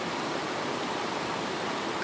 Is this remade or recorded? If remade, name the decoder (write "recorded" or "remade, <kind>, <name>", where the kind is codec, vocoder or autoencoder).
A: recorded